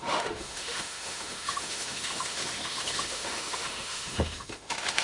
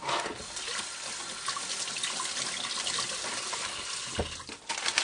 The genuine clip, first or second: second